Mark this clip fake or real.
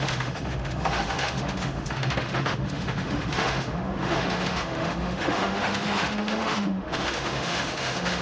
fake